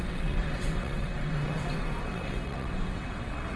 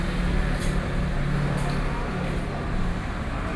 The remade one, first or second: first